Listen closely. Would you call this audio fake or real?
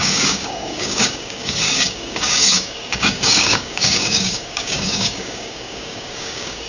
fake